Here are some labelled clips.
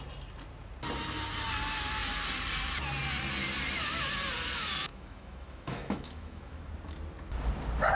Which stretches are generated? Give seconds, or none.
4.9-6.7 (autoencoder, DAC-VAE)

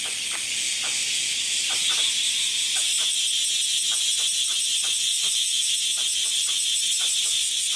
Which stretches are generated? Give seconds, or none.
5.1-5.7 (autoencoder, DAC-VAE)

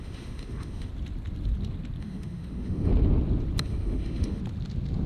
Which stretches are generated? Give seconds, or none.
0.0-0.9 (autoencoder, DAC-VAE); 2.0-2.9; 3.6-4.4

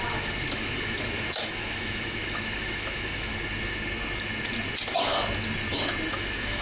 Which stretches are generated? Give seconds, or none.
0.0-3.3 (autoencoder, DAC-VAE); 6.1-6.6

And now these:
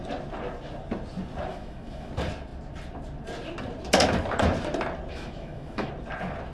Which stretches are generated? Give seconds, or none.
1.5-2.1 (autoencoder, DAC-VAE); 5.1-5.9